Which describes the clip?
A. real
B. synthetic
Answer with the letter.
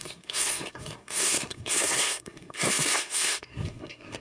B